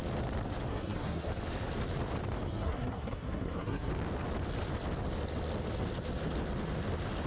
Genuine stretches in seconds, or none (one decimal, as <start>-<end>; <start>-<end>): 0.0-0.7; 1.3-2.5; 3.9-7.3